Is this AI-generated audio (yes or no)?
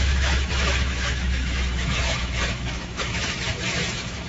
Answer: yes